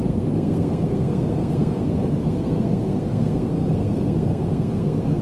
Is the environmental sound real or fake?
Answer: fake